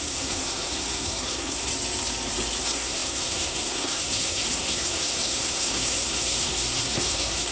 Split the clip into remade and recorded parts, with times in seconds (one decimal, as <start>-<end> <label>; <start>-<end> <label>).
0.0-1.7 remade; 1.7-2.6 recorded; 2.6-7.5 remade